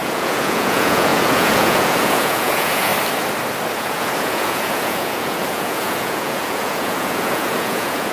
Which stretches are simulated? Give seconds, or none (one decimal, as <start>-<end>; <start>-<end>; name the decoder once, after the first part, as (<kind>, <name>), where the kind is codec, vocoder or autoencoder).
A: 0.0-2.9 (vocoder, Vocos); 3.8-8.1